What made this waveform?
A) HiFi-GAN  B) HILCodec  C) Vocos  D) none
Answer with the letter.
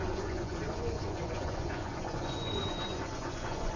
C